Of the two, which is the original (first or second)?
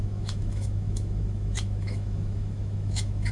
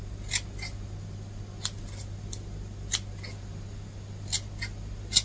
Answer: second